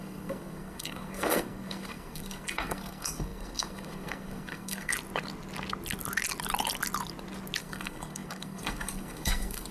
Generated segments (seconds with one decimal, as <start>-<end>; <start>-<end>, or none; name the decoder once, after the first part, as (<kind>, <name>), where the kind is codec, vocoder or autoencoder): 0.0-4.9 (codec, SNAC); 7.6-9.7